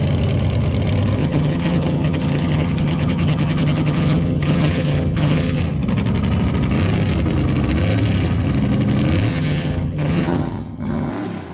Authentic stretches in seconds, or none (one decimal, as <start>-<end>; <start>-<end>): 0.0-1.2; 5.6-9.3; 11.1-11.5